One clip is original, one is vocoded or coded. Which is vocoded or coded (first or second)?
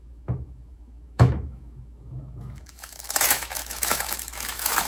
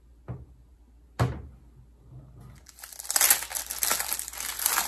first